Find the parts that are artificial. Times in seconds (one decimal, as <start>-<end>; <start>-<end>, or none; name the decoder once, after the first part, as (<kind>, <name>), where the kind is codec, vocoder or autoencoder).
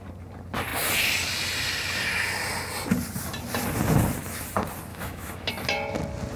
4.9-5.5 (autoencoder, DAC-VAE)